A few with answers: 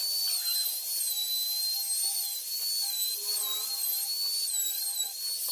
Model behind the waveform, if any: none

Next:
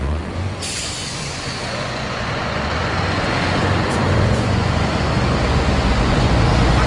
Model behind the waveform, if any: vocoder, Vocos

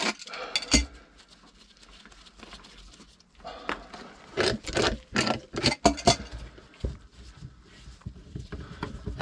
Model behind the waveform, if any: none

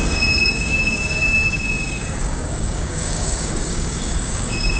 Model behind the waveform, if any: codec, DAC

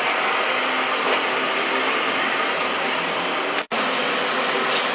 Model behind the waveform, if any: none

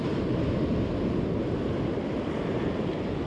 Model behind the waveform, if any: none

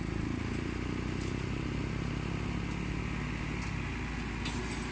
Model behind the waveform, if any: none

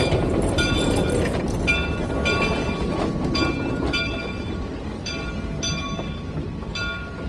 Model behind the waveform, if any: none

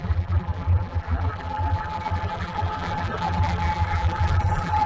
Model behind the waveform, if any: vocoder, BigVGAN v2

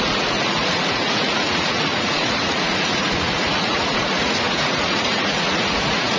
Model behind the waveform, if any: vocoder, Vocos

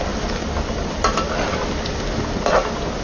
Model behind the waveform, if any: none